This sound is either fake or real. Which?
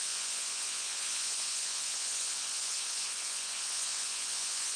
fake